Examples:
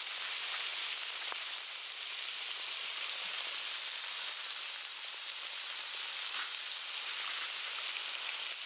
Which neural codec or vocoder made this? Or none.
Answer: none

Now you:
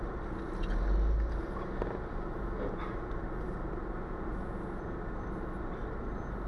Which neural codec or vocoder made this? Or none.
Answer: none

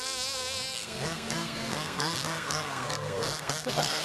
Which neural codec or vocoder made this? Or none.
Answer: codec, SNAC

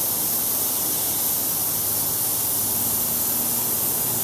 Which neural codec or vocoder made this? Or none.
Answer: none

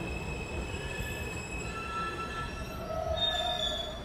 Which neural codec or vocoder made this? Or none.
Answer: none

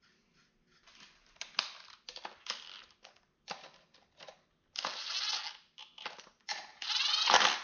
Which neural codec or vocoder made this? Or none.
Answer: none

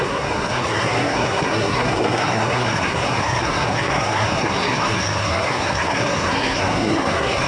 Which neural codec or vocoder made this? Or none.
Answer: codec, SNAC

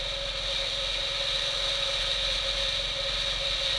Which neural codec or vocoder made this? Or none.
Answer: none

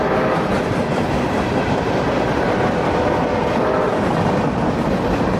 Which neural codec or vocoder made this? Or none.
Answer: none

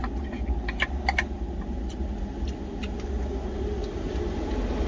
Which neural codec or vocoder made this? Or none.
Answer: none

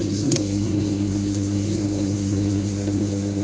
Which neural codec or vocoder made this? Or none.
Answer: codec, SNAC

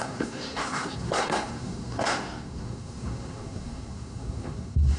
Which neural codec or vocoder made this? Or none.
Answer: codec, SNAC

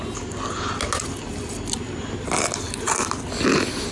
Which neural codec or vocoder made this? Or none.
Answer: none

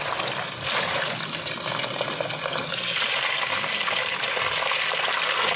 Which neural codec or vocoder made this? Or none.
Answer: none